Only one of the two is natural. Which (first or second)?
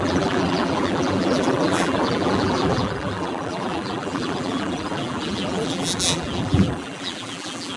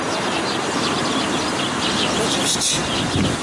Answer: second